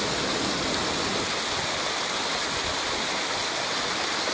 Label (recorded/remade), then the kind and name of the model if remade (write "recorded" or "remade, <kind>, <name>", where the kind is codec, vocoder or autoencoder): recorded